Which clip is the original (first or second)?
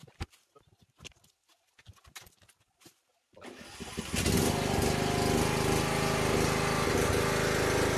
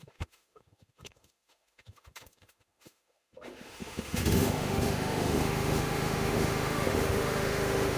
first